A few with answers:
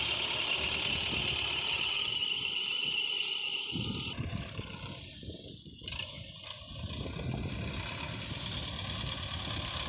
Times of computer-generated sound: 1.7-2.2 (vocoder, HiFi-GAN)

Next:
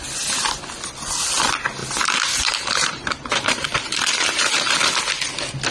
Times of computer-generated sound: 1.8-5.0 (vocoder, BigVGAN v2)

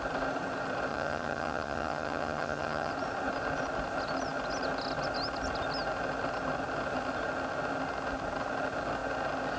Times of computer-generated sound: 0.9-2.9 (vocoder, HiFi-GAN)

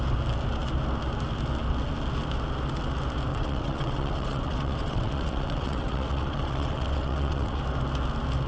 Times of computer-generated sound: 3.3-7.6 (vocoder, WaveNeXt)

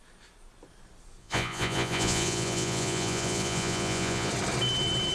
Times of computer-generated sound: 1.2-4.3 (vocoder, Vocos)

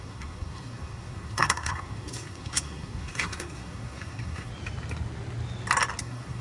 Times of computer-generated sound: 0.0-4.5 (codec, SNAC); 6.0-6.4